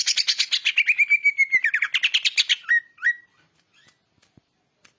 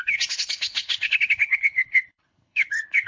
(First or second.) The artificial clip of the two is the second